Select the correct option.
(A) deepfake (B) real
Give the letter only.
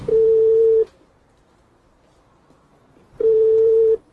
A